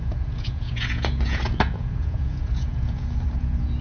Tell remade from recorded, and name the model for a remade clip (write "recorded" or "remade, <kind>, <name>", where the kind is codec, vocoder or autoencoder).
remade, vocoder, Vocos